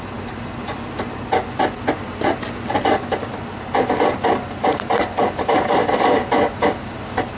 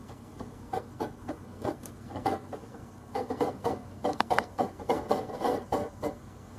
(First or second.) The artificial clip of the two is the second